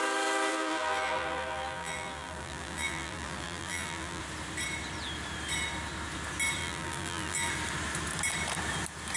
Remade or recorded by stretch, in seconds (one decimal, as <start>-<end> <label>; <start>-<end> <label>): 0.0-0.5 recorded; 0.5-4.2 remade; 4.2-6.6 recorded; 6.6-7.5 remade; 7.5-9.2 recorded